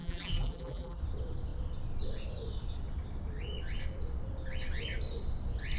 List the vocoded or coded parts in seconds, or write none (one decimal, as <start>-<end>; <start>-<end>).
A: 0.0-1.0